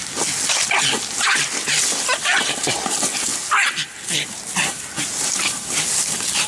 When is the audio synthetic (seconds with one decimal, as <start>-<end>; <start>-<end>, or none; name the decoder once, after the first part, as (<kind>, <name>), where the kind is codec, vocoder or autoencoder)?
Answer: 2.6-3.3 (vocoder, BigVGAN v2); 5.0-6.5